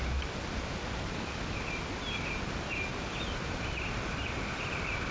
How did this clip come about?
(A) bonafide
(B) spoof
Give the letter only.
A